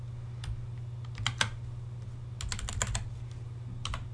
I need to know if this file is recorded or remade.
recorded